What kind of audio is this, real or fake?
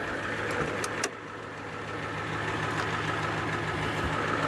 real